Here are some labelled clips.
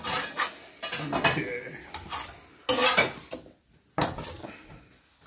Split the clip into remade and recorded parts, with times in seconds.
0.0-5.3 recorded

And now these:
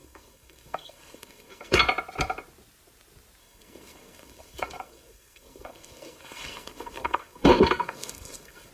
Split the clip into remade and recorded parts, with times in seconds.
0.0-1.8 remade; 1.8-3.4 recorded; 3.4-8.7 remade

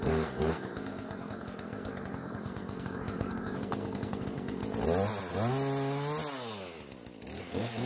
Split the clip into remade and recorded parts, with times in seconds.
0.0-4.6 remade; 4.6-7.4 recorded; 7.4-7.9 remade

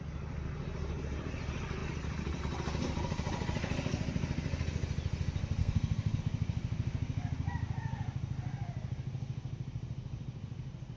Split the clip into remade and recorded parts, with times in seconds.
0.0-5.6 recorded; 5.6-6.2 remade; 6.2-11.0 recorded

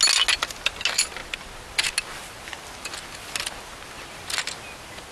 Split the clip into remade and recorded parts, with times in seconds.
0.0-5.1 recorded